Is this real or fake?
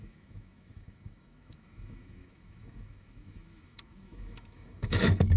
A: fake